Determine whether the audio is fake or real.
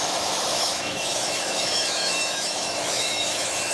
fake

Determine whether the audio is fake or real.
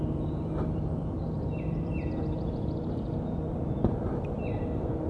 fake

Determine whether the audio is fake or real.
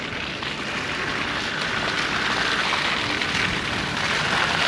real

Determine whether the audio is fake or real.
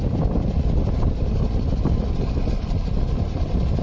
real